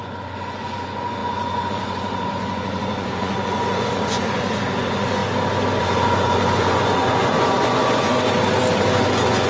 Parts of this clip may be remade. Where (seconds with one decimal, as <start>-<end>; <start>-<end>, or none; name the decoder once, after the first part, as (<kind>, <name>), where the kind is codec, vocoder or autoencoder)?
0.0-5.2 (vocoder, Vocos); 5.8-8.1; 9.1-9.5